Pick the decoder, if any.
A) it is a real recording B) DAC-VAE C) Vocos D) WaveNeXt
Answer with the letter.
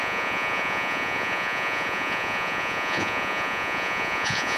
C